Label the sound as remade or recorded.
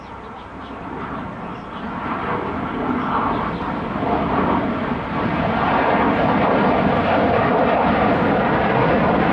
recorded